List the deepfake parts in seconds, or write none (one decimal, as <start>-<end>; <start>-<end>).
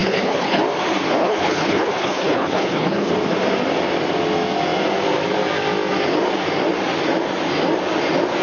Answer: 0.0-0.6; 1.2-3.1